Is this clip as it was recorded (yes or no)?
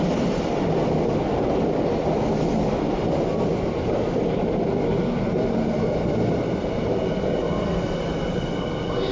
yes